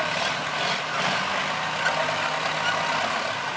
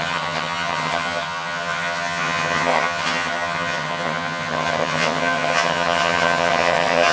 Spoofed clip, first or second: second